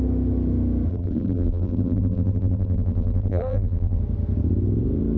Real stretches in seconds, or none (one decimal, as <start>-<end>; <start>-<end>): 0.0-0.9; 4.0-5.2